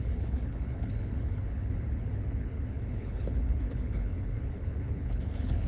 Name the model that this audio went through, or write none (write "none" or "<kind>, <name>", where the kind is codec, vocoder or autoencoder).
codec, HILCodec